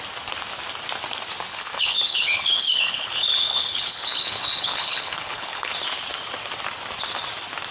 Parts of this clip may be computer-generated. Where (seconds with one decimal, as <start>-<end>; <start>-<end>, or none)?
1.5-5.7